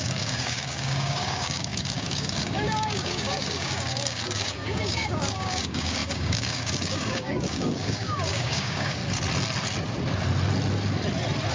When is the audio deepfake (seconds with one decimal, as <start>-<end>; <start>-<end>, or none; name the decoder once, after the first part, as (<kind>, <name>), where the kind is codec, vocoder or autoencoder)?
0.0-9.0 (codec, DAC)